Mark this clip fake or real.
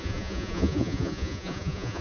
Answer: fake